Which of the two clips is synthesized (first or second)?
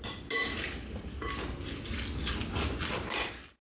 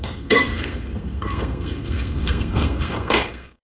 second